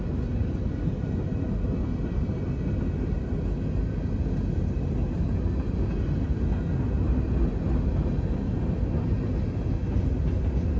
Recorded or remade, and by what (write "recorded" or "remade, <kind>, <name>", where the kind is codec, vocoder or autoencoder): recorded